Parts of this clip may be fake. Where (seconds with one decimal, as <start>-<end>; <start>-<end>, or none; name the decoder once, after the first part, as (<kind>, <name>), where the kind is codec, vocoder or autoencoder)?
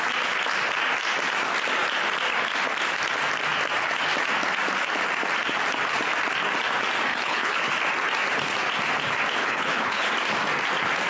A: 7.1-7.7 (codec, HILCodec); 9.4-10.1